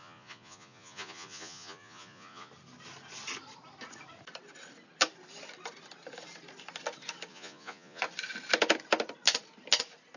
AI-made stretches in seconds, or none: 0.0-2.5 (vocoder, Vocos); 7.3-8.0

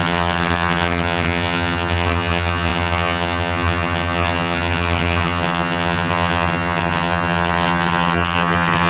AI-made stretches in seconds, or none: 0.0-8.9 (vocoder, HiFi-GAN)

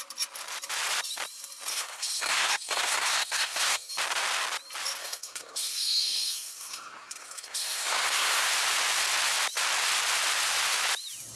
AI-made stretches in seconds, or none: 1.7-3.9 (codec, SNAC); 5.0-8.5